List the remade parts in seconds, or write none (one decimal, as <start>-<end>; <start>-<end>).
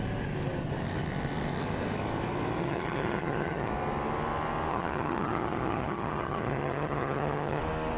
2.6-3.7; 4.7-7.6